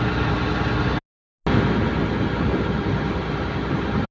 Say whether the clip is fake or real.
real